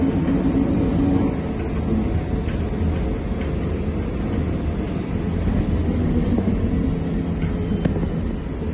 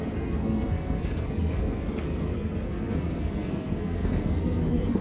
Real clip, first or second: first